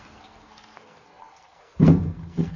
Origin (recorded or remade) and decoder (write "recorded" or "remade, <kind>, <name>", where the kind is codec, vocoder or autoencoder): remade, codec, SNAC